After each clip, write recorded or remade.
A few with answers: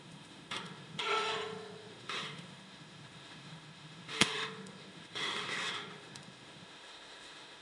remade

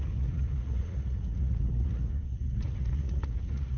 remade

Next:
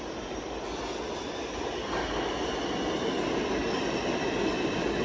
recorded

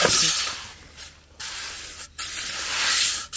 recorded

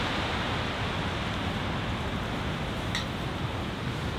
recorded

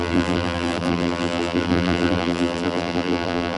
remade